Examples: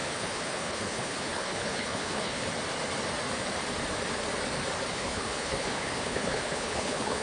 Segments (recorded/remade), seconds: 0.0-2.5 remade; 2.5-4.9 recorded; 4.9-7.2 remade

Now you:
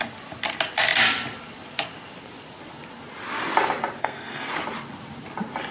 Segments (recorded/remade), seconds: 0.0-4.0 recorded; 4.0-4.5 remade; 4.5-5.7 recorded

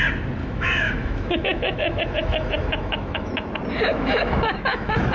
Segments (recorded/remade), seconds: 0.0-0.4 recorded; 0.4-3.5 remade; 3.5-3.9 recorded; 3.9-5.1 remade

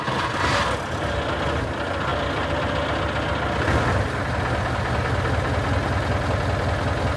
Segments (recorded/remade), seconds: 0.0-7.2 recorded